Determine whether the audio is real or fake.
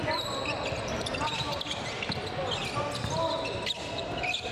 real